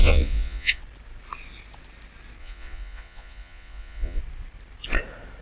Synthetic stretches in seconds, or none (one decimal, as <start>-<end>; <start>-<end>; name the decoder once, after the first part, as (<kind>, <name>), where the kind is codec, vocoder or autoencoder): 0.0-0.8 (vocoder, Vocos); 2.4-4.2